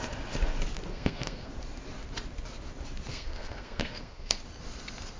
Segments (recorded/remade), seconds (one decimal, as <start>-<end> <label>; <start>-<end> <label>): 0.0-0.9 recorded; 0.9-1.5 remade; 1.5-3.1 recorded; 3.1-4.4 remade; 4.4-5.2 recorded